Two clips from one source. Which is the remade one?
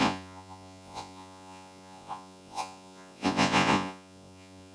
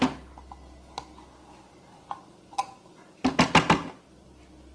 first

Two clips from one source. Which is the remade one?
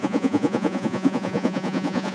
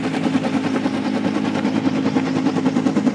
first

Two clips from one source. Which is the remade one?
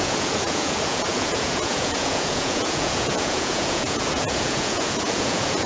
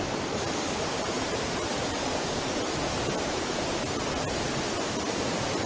first